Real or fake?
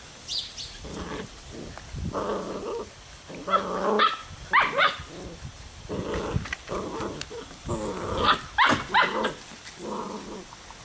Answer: real